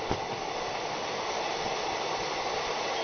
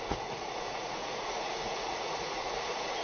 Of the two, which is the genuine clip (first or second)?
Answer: first